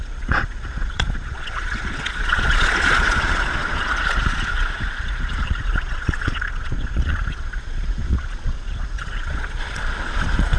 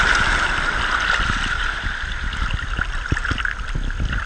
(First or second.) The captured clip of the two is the second